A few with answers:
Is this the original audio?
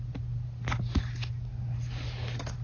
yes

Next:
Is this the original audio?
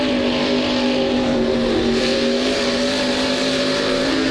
no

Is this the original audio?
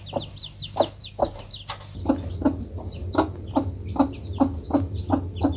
yes